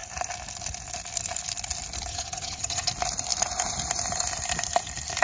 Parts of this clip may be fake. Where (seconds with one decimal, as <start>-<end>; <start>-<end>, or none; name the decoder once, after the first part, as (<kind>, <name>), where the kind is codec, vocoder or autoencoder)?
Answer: 2.1-2.9 (vocoder, HiFi-GAN)